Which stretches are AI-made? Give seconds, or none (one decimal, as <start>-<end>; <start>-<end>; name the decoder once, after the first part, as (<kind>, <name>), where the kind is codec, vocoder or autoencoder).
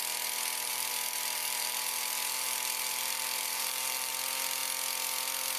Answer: 0.7-4.1 (vocoder, BigVGAN v2)